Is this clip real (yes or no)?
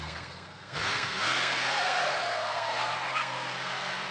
no